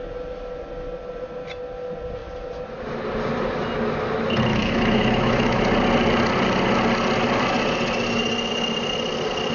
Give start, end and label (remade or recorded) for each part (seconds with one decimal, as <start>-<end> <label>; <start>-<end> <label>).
0.0-4.5 recorded; 4.5-5.6 remade; 5.6-9.5 recorded